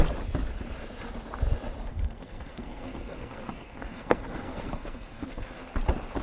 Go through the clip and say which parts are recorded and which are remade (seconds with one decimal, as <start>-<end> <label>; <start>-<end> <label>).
0.0-1.9 recorded; 1.9-5.6 remade; 5.6-6.2 recorded